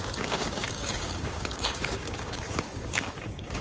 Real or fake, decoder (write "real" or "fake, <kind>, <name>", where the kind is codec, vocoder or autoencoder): fake, codec, DAC